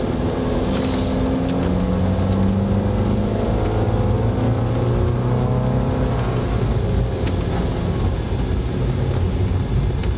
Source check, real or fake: real